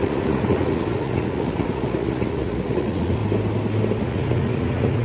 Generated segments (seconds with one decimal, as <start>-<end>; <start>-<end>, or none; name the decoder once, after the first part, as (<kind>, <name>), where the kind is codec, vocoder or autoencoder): 0.0-3.2 (vocoder, Vocos); 4.0-5.0